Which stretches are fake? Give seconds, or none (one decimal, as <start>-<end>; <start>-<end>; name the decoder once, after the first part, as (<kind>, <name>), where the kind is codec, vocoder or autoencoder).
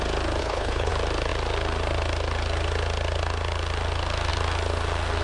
0.4-0.9 (codec, HILCodec)